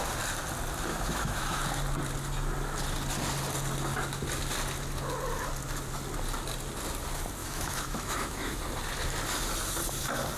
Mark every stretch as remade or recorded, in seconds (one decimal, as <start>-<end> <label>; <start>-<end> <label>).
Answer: 0.0-0.9 recorded; 0.9-1.6 remade; 1.6-7.4 recorded; 7.4-8.6 remade; 8.6-10.4 recorded